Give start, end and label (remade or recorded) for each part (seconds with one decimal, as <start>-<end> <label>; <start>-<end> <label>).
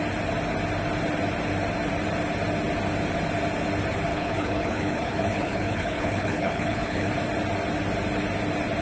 0.0-4.1 recorded; 4.1-7.1 remade; 7.1-8.8 recorded